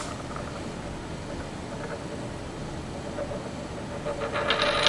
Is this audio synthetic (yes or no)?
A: no